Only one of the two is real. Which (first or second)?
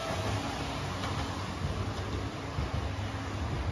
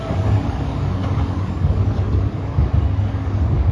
first